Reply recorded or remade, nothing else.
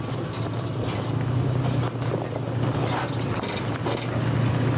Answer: recorded